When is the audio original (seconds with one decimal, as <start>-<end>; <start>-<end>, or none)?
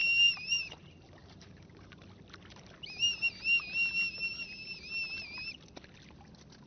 0.7-1.2; 1.9-6.7